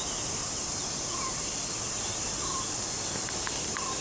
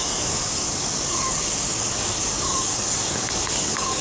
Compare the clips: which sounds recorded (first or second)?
first